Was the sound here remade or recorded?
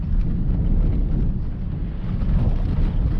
recorded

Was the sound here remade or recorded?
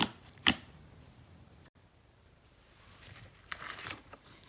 remade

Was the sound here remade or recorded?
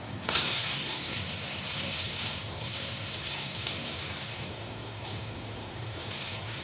remade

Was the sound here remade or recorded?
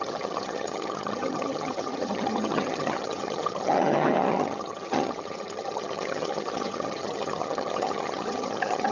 remade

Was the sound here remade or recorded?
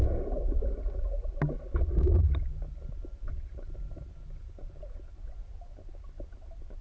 recorded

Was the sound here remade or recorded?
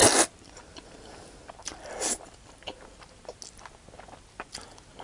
recorded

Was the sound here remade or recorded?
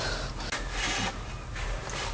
recorded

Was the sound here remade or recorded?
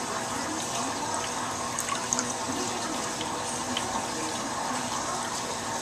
recorded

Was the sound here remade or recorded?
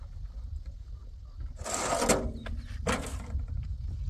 recorded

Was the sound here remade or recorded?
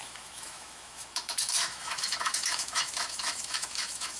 remade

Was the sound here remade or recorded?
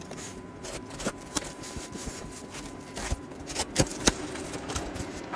remade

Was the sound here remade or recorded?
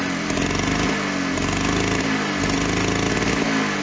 recorded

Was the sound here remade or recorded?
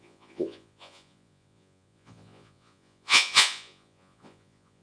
remade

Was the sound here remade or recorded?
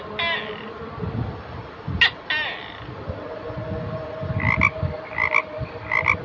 recorded